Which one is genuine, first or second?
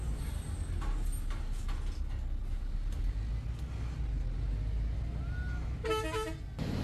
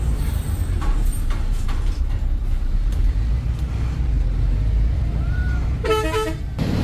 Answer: first